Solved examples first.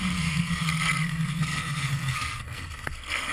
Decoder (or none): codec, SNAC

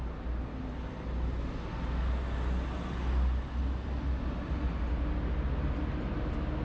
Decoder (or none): none